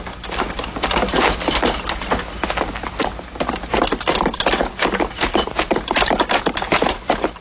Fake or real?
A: real